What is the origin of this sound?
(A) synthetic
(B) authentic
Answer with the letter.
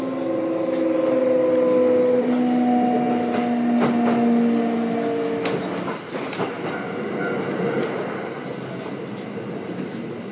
B